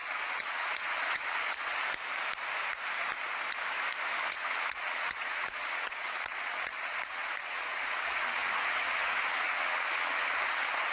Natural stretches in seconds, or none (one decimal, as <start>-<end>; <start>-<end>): 1.8-4.2